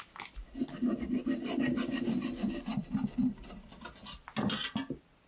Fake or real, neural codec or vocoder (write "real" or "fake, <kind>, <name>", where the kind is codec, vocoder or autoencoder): real